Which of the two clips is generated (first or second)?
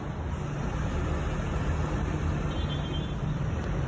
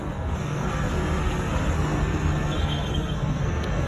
second